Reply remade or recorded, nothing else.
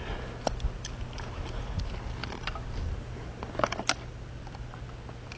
recorded